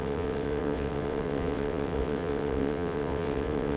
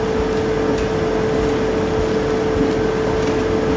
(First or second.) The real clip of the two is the second